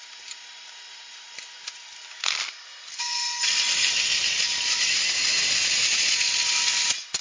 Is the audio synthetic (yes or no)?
no